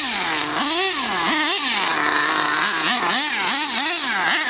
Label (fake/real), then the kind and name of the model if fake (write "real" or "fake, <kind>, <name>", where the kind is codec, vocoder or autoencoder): real